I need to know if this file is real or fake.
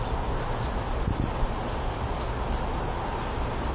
real